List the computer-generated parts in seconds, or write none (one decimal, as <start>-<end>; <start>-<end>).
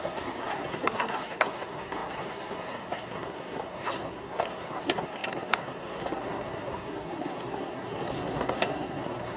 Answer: 0.0-9.4